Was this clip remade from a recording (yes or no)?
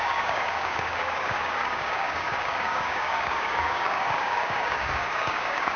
yes